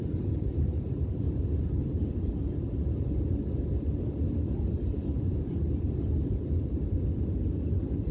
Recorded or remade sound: recorded